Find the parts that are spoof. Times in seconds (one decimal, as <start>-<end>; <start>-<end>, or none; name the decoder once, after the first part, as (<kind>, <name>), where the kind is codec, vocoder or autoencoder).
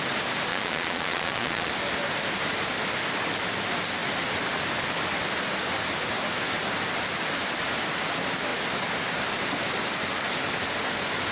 0.5-1.7 (vocoder, Vocos)